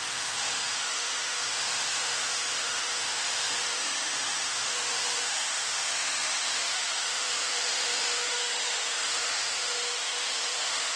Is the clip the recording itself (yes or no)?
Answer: no